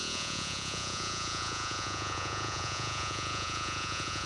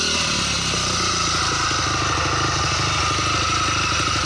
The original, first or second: second